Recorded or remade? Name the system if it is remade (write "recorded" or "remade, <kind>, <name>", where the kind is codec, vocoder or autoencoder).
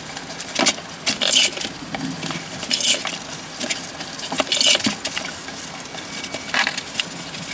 recorded